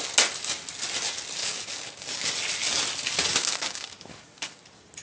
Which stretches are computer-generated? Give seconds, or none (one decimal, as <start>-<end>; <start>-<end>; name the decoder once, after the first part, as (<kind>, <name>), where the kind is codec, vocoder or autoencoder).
1.4-2.3 (codec, DAC); 3.3-4.6